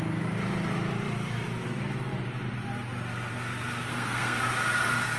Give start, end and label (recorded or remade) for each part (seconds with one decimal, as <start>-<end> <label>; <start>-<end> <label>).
0.0-3.9 recorded; 3.9-4.4 remade; 4.4-5.2 recorded